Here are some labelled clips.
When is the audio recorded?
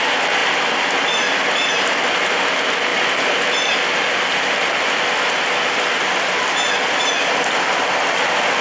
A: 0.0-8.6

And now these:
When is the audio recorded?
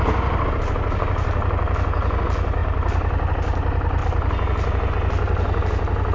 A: 0.0-6.1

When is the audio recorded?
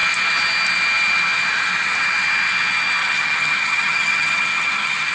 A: 0.0-3.0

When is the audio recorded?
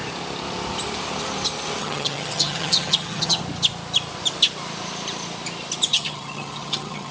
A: 0.0-1.8; 3.4-5.9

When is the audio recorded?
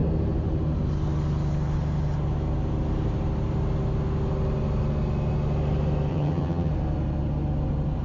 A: 0.0-6.1; 6.7-8.0